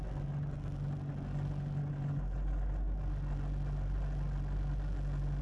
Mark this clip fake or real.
real